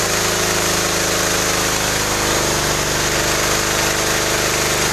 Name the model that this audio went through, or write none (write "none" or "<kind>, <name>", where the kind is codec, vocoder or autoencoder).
none